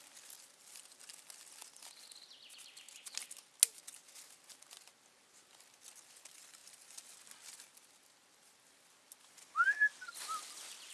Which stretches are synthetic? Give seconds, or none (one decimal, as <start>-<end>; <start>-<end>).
none